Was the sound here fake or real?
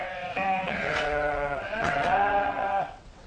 fake